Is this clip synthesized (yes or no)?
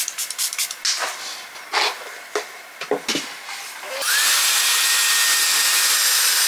no